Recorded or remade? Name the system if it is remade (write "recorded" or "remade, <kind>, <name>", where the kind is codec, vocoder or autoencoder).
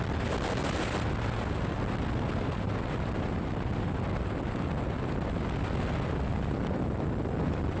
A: recorded